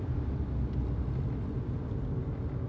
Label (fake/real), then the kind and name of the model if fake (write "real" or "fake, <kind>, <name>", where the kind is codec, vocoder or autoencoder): real